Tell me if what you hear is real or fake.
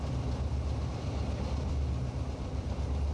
fake